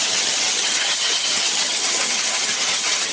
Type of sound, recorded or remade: remade